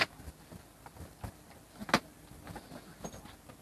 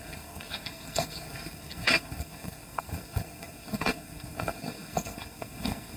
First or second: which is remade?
second